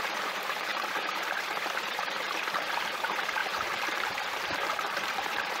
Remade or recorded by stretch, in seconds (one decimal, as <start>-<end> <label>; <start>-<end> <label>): 0.0-5.6 remade